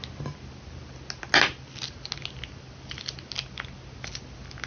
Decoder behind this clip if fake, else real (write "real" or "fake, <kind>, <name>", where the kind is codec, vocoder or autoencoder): real